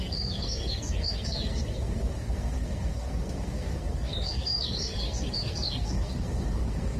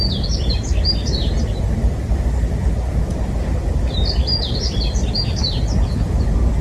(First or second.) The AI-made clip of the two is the first